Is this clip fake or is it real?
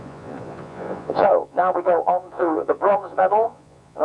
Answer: fake